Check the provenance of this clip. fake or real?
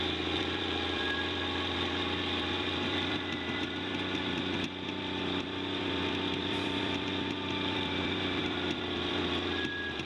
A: fake